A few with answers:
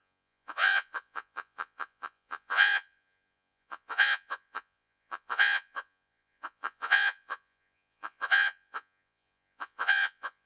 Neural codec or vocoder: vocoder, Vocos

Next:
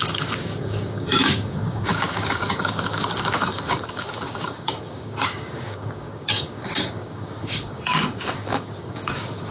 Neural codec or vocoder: codec, DAC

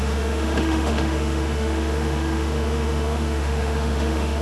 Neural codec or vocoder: autoencoder, DAC-VAE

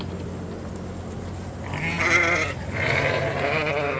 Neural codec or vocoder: none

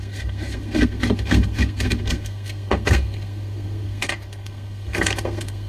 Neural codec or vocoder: codec, SNAC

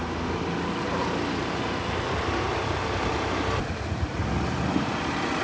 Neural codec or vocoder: none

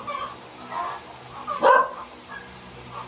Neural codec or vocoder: none